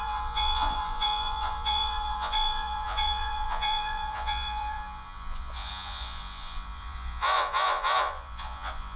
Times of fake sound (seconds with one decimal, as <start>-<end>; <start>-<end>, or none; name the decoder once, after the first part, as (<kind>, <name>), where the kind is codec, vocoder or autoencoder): 0.0-9.0 (vocoder, Vocos)

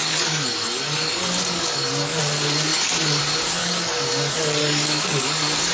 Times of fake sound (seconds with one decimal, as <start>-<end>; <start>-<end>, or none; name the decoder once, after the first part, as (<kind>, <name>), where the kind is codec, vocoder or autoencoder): 0.0-2.2 (codec, DAC); 2.7-3.2; 3.6-4.1; 4.6-5.7

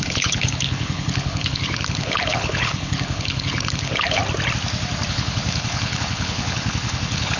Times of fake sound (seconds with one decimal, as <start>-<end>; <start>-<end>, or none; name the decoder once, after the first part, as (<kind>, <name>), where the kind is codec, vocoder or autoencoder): 0.0-4.2 (codec, HILCodec); 5.1-7.4

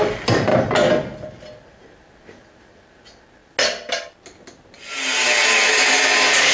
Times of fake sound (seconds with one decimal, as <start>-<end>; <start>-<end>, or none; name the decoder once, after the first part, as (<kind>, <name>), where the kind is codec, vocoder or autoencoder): none